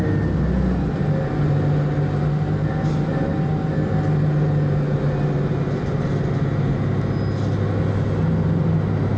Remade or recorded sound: recorded